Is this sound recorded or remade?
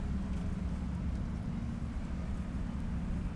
recorded